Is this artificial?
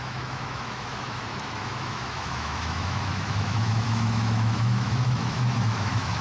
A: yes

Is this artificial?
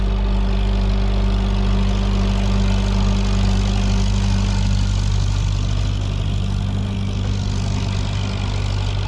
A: no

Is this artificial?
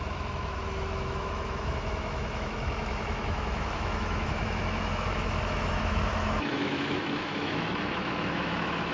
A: yes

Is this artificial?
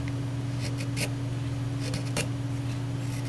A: no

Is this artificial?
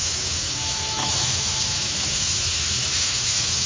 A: yes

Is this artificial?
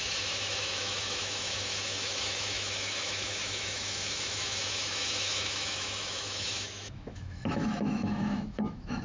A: yes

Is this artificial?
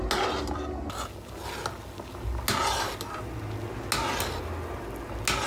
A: no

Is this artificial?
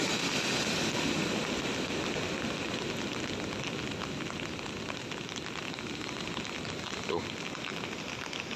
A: no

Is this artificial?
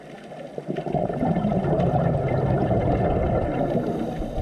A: no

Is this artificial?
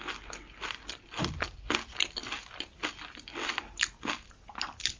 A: no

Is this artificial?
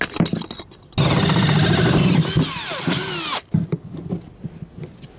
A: no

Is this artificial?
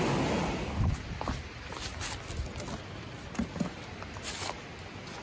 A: no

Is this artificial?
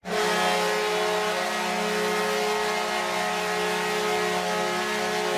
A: no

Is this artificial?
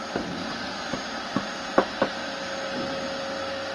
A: no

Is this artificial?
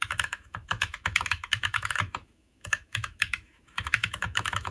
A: yes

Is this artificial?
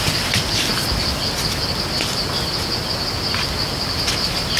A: no